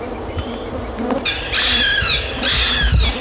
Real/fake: real